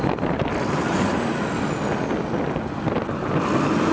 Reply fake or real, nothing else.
real